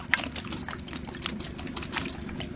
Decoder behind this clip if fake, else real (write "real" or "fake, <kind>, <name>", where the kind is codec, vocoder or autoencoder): real